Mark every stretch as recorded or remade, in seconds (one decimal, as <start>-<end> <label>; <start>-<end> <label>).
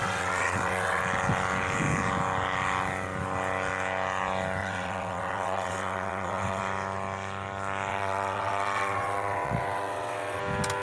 0.0-1.0 remade; 1.0-4.6 recorded; 4.6-6.6 remade; 6.6-7.9 recorded; 7.9-10.4 remade; 10.4-10.8 recorded